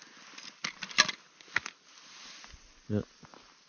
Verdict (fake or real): real